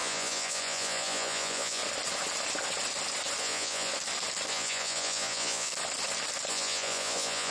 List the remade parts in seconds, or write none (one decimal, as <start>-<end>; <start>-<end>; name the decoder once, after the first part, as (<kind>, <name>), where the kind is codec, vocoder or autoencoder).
0.0-1.8 (vocoder, Vocos); 3.4-3.9; 4.5-5.7; 6.5-7.5